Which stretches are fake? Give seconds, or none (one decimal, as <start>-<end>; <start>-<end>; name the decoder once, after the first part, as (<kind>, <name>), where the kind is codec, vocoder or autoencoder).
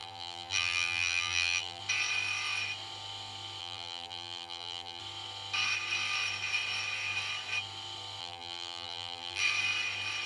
0.0-1.8 (vocoder, BigVGAN v2); 3.6-5.0; 8.2-9.4